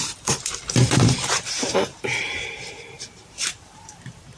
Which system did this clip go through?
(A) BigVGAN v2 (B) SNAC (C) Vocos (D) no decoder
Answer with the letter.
A